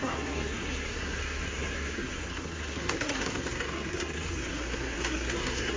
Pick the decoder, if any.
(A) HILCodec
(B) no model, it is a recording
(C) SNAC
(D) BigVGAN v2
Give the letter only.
C